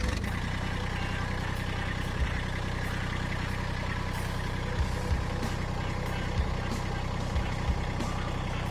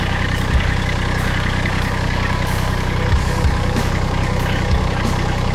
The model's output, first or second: second